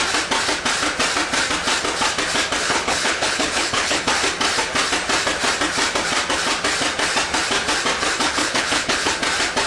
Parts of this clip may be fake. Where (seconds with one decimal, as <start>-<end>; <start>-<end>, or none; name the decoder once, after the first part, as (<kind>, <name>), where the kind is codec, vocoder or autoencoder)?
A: 2.6-4.1 (codec, HILCodec); 8.2-9.1